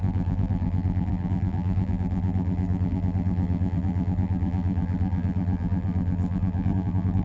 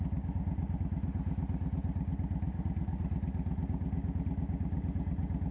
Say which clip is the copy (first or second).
first